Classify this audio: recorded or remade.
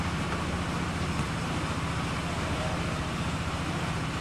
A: recorded